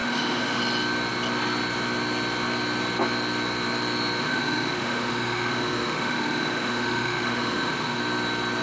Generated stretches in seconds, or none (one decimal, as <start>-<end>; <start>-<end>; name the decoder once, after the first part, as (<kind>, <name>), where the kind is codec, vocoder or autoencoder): 0.0-0.6 (autoencoder, DAC-VAE); 4.2-8.0